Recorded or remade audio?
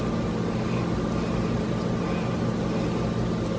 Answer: recorded